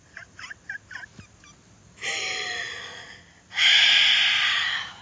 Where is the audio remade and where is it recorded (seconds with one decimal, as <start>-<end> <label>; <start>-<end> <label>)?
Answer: 0.0-5.0 recorded